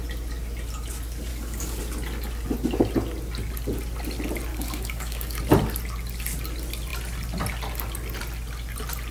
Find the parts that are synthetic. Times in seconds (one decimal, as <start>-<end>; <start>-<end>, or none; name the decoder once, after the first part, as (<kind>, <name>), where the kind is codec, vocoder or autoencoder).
1.3-1.8 (codec, DAC); 4.5-5.4